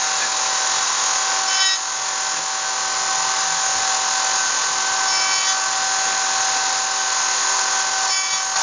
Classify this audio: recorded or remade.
recorded